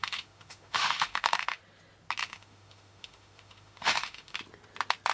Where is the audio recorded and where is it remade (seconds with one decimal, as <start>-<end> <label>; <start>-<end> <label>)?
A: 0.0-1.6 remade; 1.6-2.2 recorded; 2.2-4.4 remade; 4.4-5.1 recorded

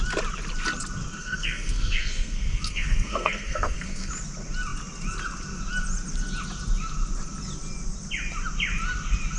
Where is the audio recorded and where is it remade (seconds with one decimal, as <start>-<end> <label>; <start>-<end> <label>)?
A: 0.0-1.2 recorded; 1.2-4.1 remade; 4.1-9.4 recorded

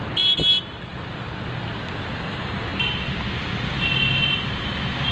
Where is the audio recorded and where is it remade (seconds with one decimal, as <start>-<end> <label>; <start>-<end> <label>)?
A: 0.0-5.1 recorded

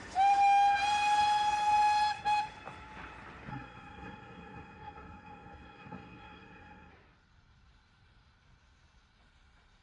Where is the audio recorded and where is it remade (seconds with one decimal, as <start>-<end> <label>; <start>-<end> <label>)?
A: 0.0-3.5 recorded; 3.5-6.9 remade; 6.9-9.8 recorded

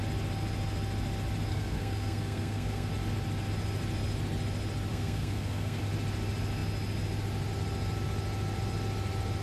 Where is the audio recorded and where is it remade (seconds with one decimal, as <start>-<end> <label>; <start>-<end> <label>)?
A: 0.0-1.5 recorded; 1.5-2.9 remade; 2.9-4.9 recorded; 4.9-5.8 remade; 5.8-9.4 recorded